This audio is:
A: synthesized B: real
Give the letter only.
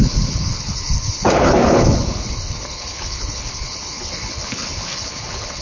A